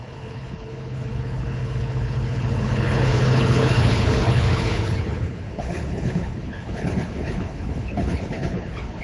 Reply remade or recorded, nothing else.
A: remade